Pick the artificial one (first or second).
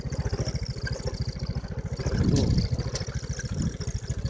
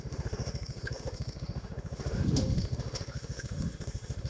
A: second